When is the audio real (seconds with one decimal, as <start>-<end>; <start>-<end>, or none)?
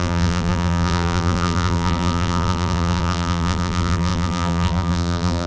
none